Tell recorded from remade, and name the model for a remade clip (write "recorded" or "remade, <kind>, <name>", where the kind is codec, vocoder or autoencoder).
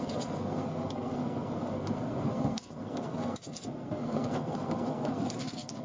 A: remade, codec, SNAC